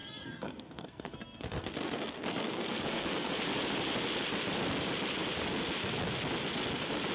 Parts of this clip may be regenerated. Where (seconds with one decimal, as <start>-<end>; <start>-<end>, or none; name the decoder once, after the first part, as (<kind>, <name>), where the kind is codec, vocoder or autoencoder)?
0.0-3.3 (codec, SNAC)